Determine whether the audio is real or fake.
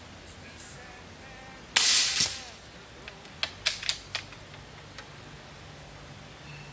real